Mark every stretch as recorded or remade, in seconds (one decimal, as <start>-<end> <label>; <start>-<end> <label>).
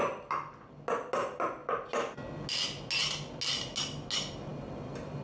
0.0-5.2 recorded